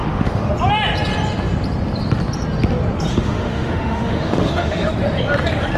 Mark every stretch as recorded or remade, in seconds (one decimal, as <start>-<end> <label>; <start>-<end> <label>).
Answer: 0.0-0.5 remade; 0.5-3.1 recorded; 3.1-4.9 remade; 4.9-5.8 recorded